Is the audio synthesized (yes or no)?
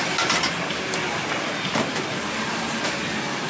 no